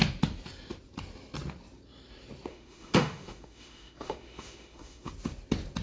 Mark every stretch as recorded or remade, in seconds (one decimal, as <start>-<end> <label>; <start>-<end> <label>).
0.0-2.5 recorded; 2.5-5.1 remade; 5.1-5.8 recorded